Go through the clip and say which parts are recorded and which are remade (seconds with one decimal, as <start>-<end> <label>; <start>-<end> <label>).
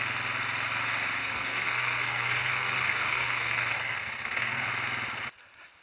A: 0.0-1.2 recorded; 1.2-4.7 remade; 4.7-5.8 recorded